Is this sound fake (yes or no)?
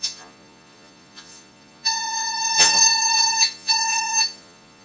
yes